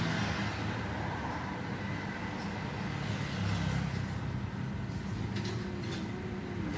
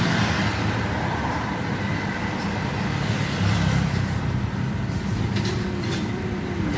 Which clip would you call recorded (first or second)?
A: first